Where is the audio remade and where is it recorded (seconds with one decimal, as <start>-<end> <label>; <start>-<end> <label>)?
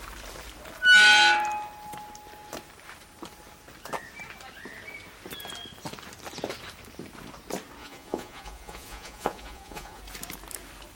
0.0-7.8 recorded; 7.8-10.0 remade; 10.0-11.0 recorded